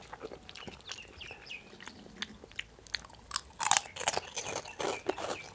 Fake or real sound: real